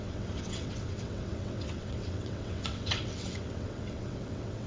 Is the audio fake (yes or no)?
yes